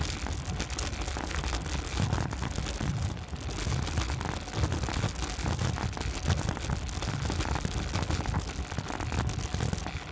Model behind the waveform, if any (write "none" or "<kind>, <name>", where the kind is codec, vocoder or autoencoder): none